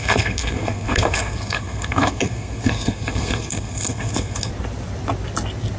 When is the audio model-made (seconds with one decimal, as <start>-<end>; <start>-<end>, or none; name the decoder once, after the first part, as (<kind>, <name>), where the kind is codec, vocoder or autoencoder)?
0.0-4.5 (codec, SNAC)